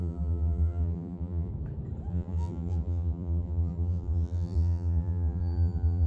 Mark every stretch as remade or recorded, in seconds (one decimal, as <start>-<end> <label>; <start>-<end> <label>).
0.0-1.5 remade; 1.5-2.1 recorded; 2.1-6.1 remade